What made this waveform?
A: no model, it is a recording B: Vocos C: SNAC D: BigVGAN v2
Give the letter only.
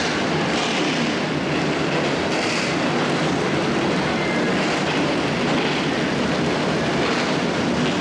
A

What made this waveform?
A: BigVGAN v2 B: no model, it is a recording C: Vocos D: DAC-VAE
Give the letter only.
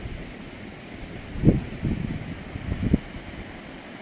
B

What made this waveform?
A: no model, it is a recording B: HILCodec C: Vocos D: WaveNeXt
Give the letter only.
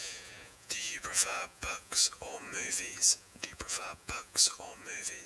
C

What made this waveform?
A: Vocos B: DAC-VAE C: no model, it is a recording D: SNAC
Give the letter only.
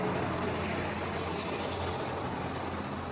C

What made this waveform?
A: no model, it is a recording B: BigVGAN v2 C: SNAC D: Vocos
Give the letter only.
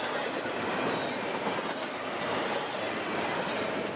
A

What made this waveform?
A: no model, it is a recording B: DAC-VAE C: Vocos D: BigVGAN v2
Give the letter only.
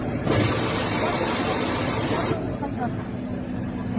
A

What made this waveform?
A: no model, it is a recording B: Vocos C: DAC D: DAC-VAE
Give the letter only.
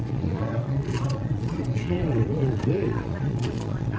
B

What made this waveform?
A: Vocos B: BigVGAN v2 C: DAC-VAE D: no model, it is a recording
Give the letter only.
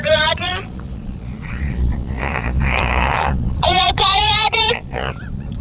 A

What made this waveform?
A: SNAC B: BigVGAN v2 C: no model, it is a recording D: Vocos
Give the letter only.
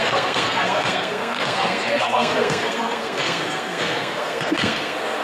A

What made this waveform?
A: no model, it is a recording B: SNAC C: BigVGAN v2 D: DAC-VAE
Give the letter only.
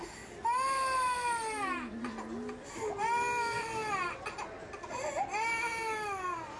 A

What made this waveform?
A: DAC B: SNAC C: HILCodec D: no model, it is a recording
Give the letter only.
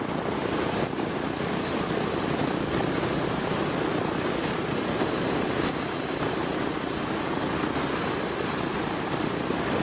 D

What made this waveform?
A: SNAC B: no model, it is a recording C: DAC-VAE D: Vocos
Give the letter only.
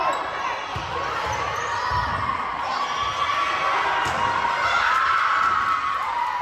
B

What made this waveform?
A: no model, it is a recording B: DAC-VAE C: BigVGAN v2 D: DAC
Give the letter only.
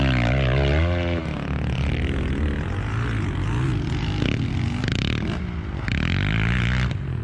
A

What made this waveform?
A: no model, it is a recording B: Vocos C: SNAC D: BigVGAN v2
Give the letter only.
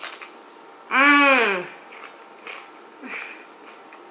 A